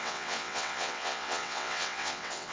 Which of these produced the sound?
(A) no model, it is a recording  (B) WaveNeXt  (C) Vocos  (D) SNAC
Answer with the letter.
B